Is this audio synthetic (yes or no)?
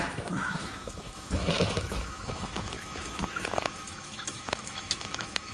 yes